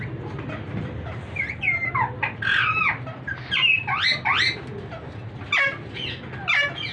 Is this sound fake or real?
real